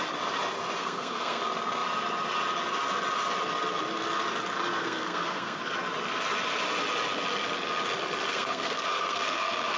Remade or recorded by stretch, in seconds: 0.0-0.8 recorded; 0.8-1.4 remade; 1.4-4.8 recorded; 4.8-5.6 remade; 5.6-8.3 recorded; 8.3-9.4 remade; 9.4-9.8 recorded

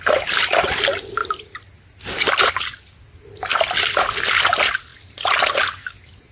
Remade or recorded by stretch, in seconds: 0.0-6.3 recorded